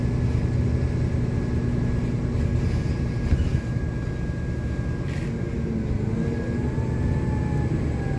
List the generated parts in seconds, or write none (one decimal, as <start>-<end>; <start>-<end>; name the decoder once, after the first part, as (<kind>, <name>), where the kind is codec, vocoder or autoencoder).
none